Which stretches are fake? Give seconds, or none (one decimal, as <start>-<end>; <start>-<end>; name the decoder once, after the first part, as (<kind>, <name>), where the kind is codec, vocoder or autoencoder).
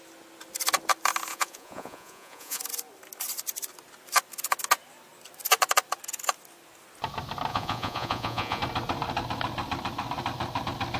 1.3-2.6 (vocoder, Vocos); 7.5-8.6